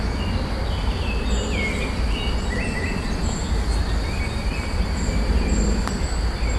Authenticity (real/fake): real